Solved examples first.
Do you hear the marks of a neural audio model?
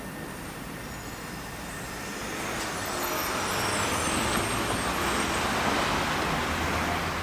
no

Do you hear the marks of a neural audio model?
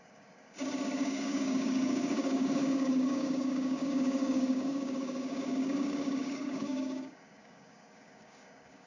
yes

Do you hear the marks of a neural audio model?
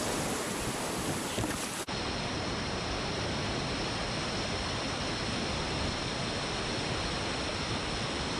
no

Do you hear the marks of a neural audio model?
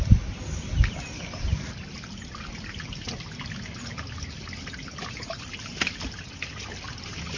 no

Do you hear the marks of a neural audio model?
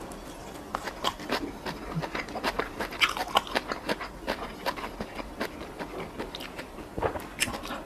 no